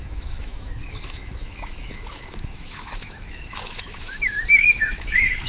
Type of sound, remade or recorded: remade